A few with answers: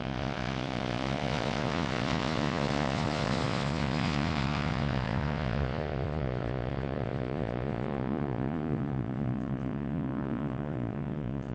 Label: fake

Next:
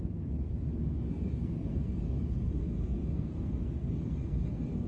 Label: fake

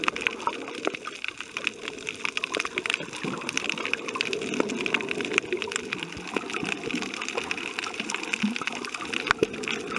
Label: real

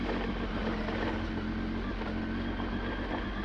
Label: real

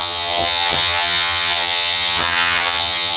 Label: fake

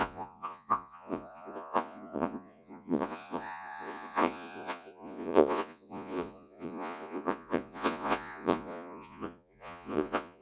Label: fake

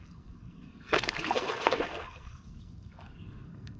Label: fake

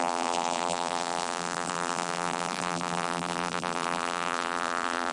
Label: fake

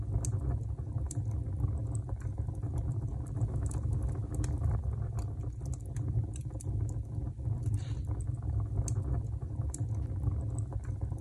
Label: real